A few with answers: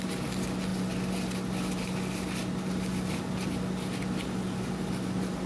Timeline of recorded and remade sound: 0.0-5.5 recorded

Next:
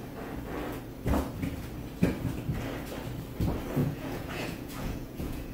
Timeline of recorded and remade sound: 0.0-3.8 recorded; 3.8-5.5 remade

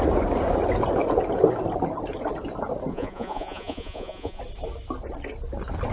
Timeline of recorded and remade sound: 0.0-2.9 recorded; 2.9-4.4 remade; 4.4-5.9 recorded